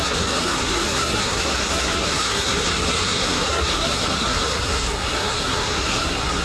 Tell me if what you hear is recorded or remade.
remade